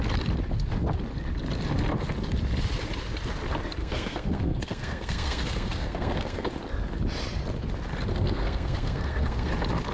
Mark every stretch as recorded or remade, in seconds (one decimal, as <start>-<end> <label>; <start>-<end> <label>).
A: 0.0-3.8 recorded; 3.8-6.5 remade; 6.5-8.1 recorded; 8.1-9.5 remade; 9.5-9.9 recorded